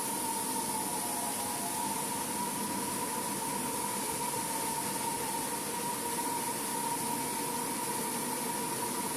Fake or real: real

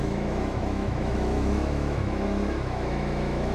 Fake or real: fake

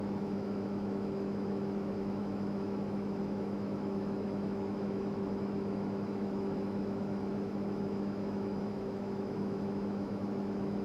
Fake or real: fake